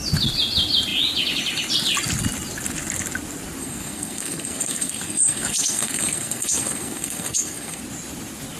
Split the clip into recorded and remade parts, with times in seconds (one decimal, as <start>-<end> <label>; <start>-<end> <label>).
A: 0.0-3.6 recorded; 3.6-7.8 remade; 7.8-8.6 recorded